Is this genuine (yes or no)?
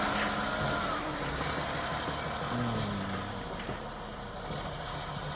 yes